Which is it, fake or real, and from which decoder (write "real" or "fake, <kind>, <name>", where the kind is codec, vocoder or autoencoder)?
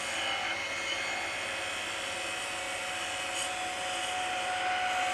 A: real